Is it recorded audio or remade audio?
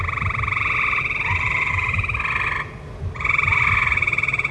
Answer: recorded